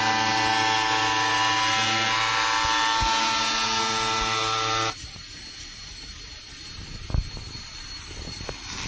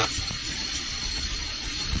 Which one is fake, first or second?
second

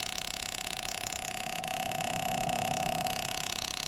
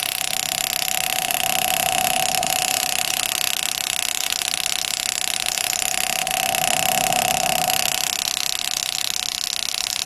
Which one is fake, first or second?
first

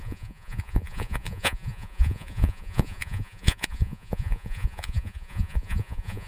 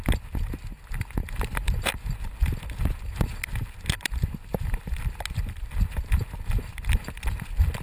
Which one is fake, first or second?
first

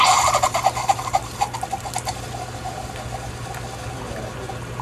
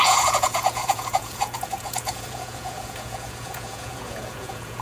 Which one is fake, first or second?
second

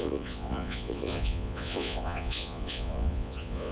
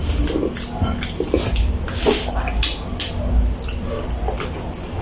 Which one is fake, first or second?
first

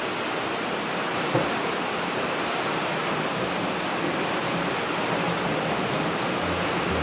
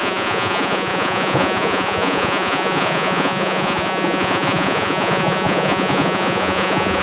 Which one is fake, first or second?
second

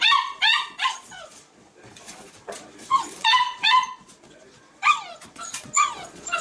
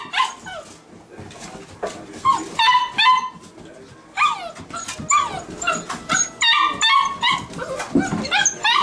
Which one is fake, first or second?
first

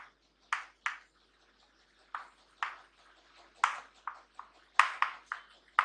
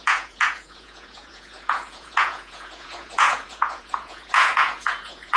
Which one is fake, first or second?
second